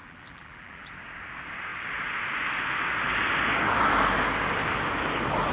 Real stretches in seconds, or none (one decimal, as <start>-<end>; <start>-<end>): 0.9-5.5